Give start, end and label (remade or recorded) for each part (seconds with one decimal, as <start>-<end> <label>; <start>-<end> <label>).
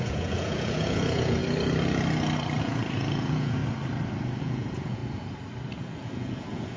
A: 0.0-1.4 remade; 1.4-2.6 recorded; 2.6-3.6 remade; 3.6-4.4 recorded; 4.4-5.0 remade; 5.0-5.8 recorded; 5.8-6.8 remade